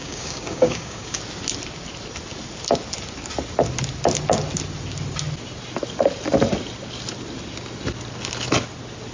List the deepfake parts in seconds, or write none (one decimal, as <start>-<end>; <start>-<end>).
0.0-1.2